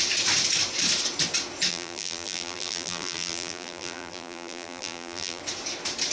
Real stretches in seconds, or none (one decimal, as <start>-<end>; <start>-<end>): 0.0-1.7; 5.4-6.1